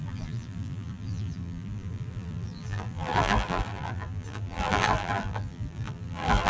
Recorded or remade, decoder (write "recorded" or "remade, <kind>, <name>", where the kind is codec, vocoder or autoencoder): remade, vocoder, BigVGAN v2